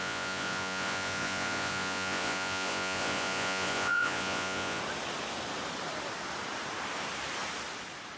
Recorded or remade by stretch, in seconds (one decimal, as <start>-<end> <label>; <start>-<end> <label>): 0.0-4.8 remade; 4.8-8.2 recorded